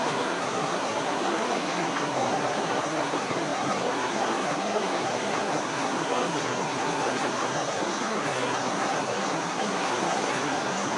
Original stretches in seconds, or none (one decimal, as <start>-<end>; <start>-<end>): none